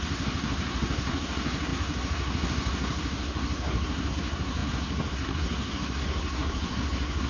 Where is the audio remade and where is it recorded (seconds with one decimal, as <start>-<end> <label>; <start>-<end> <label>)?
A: 0.0-7.3 remade